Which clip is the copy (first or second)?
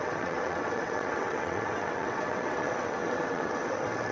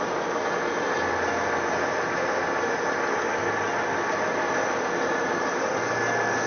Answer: first